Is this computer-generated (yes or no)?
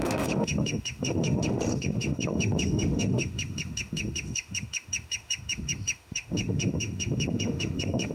yes